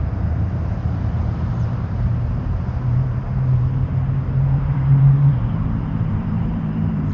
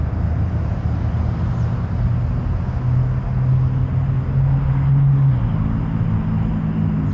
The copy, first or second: first